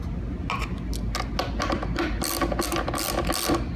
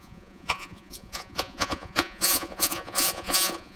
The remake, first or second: second